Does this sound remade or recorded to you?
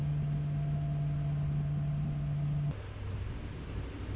recorded